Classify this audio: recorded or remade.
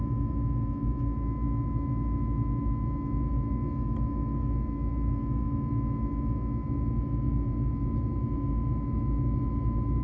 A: recorded